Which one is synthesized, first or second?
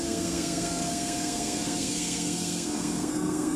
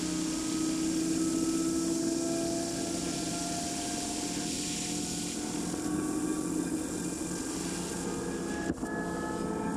first